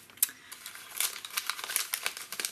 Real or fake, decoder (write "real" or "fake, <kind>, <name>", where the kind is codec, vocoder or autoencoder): real